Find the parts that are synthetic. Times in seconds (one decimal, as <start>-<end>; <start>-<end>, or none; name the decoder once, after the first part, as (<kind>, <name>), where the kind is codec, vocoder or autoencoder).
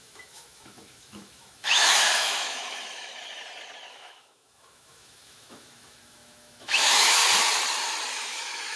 0.0-3.1 (autoencoder, DAC-VAE); 3.9-7.2; 8.1-8.8